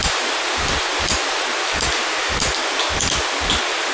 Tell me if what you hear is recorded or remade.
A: recorded